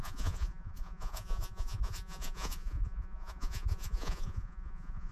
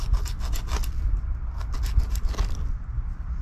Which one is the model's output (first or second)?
first